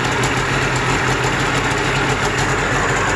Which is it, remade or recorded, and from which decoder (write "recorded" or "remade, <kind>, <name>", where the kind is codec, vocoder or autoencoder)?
recorded